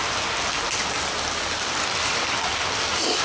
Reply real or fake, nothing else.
real